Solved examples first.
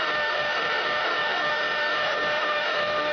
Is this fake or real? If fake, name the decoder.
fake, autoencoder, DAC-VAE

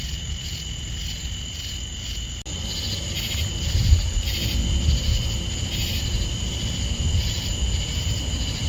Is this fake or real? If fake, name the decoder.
real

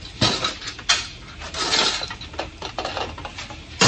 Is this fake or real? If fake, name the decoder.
real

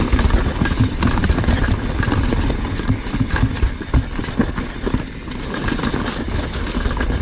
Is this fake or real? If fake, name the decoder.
real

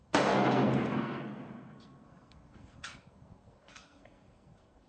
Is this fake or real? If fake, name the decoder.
fake, codec, SNAC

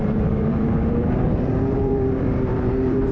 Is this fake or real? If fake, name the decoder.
fake, vocoder, BigVGAN v2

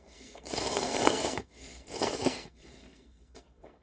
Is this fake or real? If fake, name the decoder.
fake, codec, SNAC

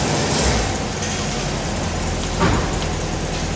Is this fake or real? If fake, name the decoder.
real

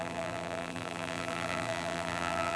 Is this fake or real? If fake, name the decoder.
fake, vocoder, BigVGAN v2